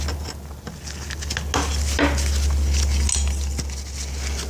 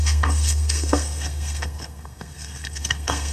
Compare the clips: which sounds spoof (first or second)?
second